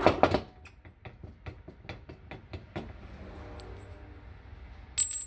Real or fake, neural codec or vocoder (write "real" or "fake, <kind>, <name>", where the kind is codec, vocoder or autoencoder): real